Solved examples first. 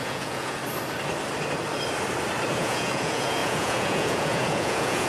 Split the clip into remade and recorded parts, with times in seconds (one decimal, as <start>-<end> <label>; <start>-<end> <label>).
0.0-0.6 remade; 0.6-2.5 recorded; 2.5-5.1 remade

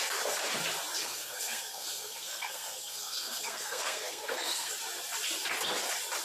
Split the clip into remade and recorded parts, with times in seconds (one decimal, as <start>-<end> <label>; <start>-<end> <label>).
0.0-1.0 recorded; 1.0-4.7 remade; 4.7-6.2 recorded

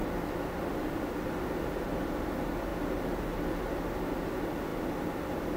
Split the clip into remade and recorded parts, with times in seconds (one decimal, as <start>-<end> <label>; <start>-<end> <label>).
0.0-5.6 recorded

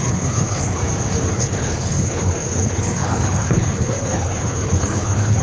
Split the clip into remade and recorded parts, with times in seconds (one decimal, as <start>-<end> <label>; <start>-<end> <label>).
0.0-0.8 remade; 0.8-1.3 recorded; 1.3-5.4 remade

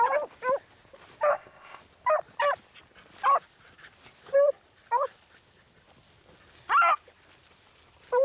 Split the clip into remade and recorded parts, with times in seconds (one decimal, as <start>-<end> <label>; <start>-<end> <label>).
0.0-1.3 recorded; 1.3-1.8 remade; 1.8-8.2 recorded

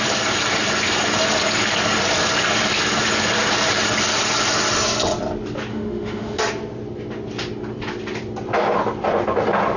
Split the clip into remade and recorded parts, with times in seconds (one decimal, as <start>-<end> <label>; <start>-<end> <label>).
0.0-5.7 recorded; 5.7-6.4 remade; 6.4-9.8 recorded